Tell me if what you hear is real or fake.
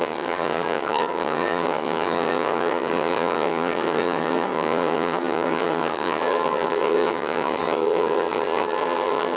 fake